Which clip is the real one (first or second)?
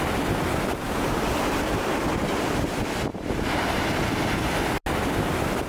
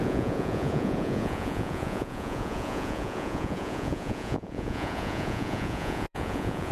first